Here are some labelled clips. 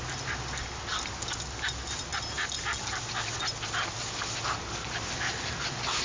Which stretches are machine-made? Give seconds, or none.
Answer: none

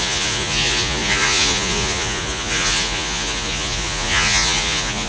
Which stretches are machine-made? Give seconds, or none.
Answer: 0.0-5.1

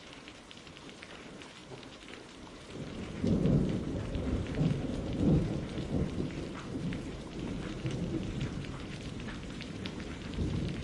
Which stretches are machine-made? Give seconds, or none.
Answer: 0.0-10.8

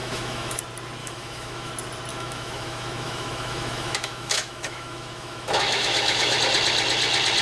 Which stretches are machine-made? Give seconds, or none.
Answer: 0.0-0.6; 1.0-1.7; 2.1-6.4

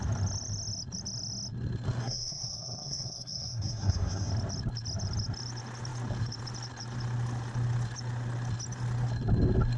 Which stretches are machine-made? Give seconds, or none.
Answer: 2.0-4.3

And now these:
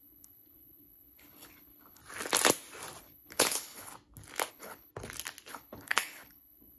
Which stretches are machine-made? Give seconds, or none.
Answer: 0.0-2.0; 3.0-3.9; 4.5-4.9; 5.5-6.8